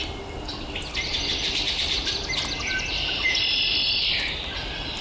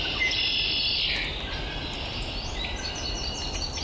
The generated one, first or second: first